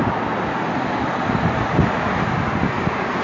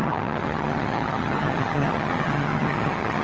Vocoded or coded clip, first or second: second